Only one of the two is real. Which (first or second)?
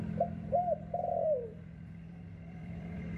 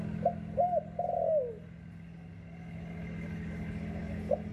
second